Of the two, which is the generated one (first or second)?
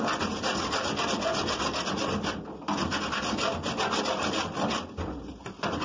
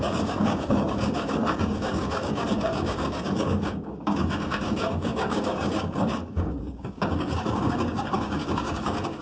second